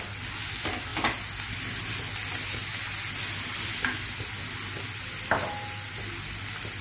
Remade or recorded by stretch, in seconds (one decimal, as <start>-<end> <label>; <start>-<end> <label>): 0.0-6.8 recorded